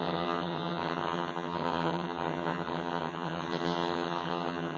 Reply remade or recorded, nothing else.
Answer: remade